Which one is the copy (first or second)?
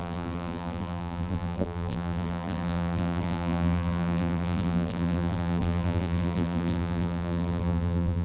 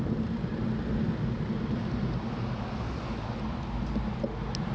first